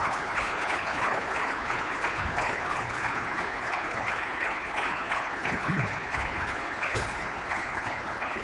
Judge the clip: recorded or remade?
remade